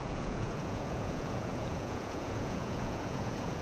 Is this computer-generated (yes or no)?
yes